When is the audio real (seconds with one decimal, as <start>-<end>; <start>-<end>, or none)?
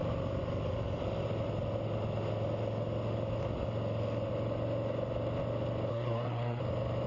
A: 0.0-5.9; 6.6-7.1